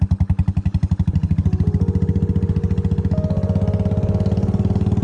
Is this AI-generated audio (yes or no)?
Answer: no